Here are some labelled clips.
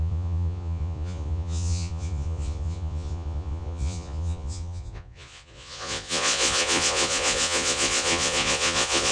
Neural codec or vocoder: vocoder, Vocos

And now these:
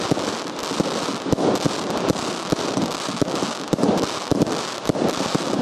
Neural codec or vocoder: none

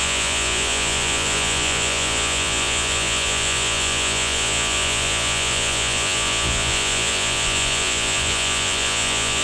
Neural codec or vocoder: vocoder, Vocos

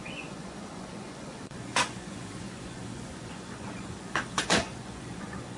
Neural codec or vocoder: vocoder, Vocos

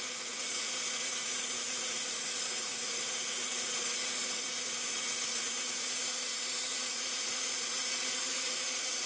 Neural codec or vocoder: vocoder, Vocos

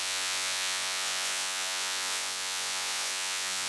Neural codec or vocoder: vocoder, Vocos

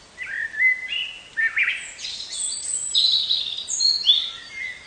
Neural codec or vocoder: none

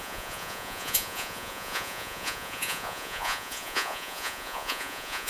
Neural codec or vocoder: vocoder, Vocos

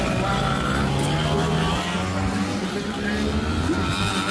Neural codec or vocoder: none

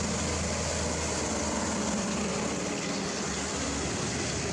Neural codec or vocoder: none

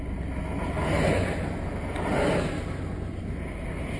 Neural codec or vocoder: none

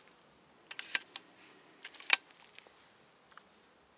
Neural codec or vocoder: none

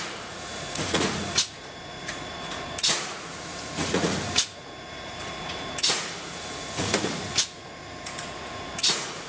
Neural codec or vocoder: vocoder, Vocos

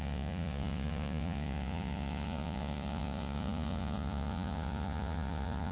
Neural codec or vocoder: vocoder, Vocos